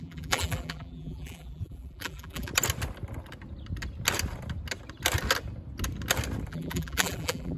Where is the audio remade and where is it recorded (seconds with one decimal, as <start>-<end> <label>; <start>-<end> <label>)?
0.0-2.5 remade; 2.5-6.5 recorded; 6.5-7.6 remade

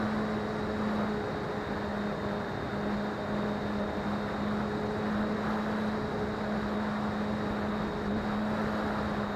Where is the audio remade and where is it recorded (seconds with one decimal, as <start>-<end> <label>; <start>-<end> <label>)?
0.0-9.4 recorded

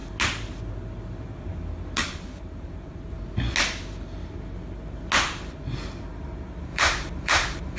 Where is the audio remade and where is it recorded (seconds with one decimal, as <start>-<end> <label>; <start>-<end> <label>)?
0.0-2.0 recorded; 2.0-3.1 remade; 3.1-6.7 recorded; 6.7-7.8 remade

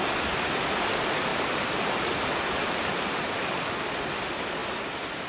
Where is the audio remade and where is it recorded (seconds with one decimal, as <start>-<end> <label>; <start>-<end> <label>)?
0.0-5.3 recorded

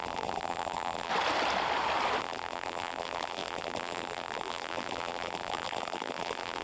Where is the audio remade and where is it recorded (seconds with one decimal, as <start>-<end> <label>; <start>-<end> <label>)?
0.0-1.1 remade; 1.1-2.2 recorded; 2.2-6.6 remade

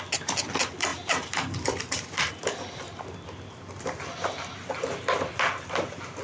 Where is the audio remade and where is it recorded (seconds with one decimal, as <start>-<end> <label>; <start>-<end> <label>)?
0.0-0.9 recorded; 0.9-2.3 remade; 2.3-6.2 recorded

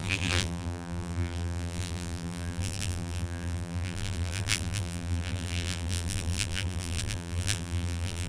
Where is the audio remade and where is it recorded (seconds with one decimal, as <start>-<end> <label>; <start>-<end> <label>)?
0.0-8.3 remade